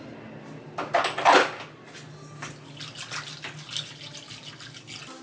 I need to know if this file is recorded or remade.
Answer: recorded